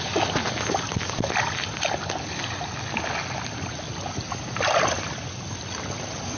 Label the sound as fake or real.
real